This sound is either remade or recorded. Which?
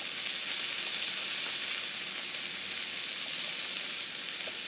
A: recorded